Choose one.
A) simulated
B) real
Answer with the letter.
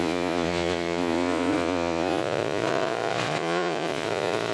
A